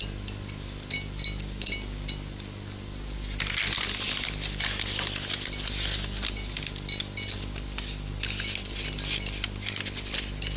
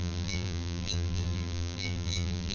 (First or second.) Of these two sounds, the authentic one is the first